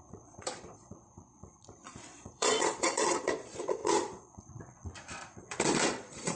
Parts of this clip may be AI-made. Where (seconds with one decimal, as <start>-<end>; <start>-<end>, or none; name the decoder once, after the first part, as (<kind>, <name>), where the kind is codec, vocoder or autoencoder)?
0.0-6.4 (vocoder, Vocos)